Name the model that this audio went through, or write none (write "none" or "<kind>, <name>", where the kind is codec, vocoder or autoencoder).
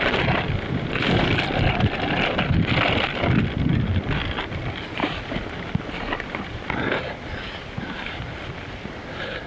none